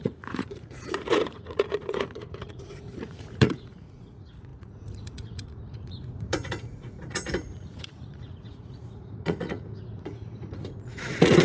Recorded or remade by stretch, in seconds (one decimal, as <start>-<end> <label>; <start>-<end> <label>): 0.0-11.4 remade